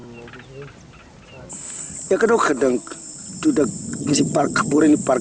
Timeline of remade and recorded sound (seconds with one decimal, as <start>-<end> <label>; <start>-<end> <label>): 0.0-3.9 recorded; 3.9-4.8 remade; 4.8-5.2 recorded